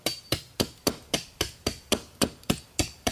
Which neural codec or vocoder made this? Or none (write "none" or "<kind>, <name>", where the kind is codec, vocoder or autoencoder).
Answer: none